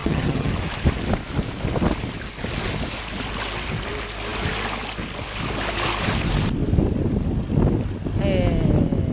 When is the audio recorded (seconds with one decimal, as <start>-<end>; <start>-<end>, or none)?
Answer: 0.5-9.1